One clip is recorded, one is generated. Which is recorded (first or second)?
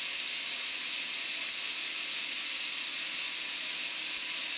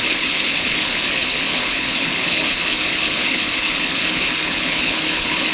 first